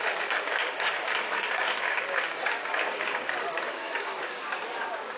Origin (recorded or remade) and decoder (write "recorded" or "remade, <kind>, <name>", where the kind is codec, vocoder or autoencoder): remade, codec, DAC